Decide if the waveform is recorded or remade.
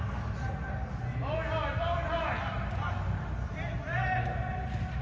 recorded